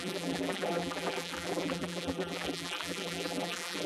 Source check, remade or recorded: remade